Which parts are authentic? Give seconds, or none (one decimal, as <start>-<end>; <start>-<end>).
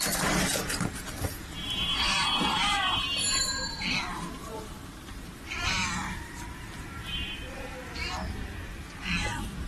0.0-1.6; 3.4-4.1; 8.1-9.7